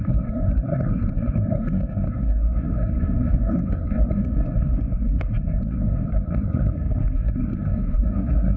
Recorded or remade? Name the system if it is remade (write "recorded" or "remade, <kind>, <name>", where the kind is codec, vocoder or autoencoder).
remade, codec, SNAC